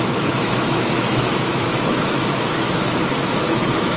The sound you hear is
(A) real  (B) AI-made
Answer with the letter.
B